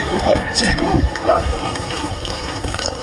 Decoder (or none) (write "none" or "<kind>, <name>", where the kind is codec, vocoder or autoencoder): codec, SNAC